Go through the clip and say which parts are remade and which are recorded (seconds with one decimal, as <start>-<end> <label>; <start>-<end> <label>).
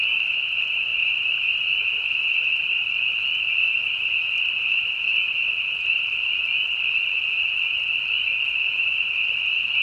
0.0-9.8 recorded